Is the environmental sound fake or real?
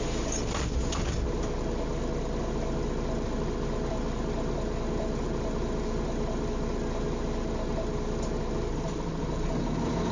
real